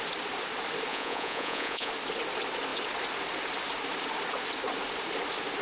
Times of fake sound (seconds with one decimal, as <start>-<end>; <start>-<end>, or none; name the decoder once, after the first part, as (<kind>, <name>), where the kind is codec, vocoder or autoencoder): 0.9-1.9 (vocoder, Vocos)